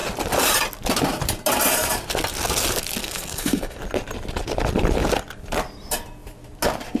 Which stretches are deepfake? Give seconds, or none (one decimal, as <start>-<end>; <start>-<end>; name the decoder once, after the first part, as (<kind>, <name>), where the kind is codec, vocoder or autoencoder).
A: 3.0-3.8 (codec, SNAC)